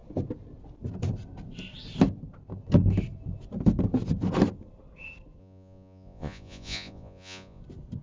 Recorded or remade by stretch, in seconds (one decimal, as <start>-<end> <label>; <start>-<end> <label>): 0.0-5.4 recorded; 5.4-7.6 remade; 7.6-8.0 recorded